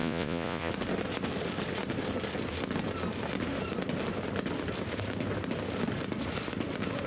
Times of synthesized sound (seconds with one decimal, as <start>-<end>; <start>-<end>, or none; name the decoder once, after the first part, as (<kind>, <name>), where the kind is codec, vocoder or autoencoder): 0.0-0.7 (vocoder, Vocos)